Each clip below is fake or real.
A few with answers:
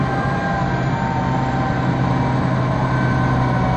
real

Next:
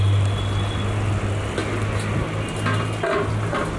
real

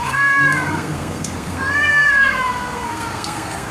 fake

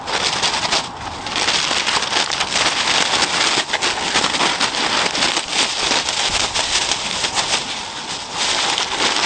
real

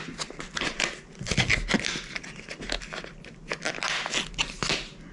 real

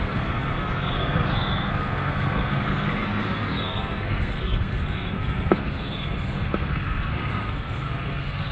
fake